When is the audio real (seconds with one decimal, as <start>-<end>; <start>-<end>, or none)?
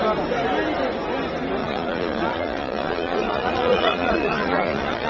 0.0-1.6